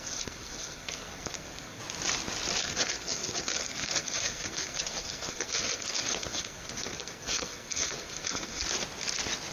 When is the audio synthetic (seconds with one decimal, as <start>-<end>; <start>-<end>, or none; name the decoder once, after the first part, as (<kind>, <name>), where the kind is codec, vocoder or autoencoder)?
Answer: 0.0-1.8 (codec, SNAC); 2.6-8.6